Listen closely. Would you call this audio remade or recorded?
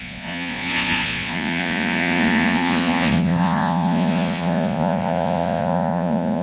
remade